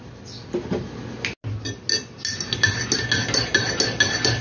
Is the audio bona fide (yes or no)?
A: yes